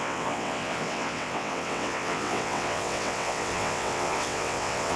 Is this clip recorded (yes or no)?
no